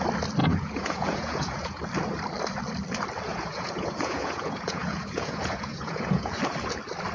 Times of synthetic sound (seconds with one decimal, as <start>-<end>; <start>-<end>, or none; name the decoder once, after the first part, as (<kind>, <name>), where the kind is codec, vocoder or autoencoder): 0.4-1.8 (vocoder, Vocos); 3.3-6.4